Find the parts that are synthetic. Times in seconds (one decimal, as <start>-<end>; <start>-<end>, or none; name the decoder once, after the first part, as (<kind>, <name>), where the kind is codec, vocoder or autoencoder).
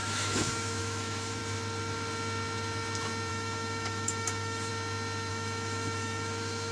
0.0-1.4 (autoencoder, DAC-VAE); 3.3-4.7; 5.3-6.7